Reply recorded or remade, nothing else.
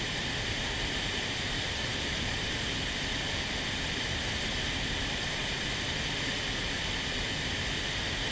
recorded